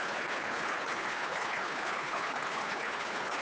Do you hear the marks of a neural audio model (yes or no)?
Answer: yes